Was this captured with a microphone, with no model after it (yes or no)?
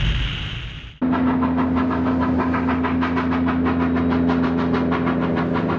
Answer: yes